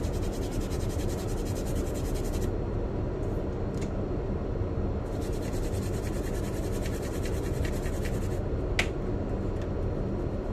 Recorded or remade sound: recorded